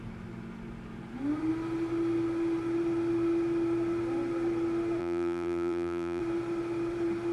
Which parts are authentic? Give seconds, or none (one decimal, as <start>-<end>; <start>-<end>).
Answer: 0.0-5.0; 6.2-7.3